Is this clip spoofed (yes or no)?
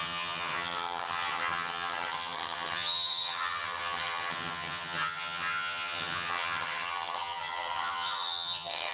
yes